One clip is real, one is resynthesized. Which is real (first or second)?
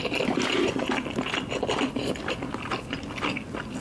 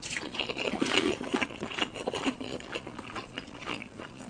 first